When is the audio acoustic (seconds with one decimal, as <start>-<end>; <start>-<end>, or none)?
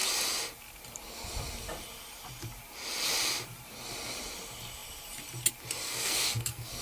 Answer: 0.0-5.9